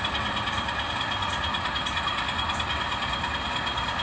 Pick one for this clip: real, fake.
real